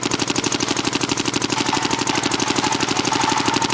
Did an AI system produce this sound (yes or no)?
no